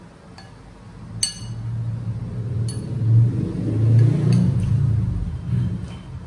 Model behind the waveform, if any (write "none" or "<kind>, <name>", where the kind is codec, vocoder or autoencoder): none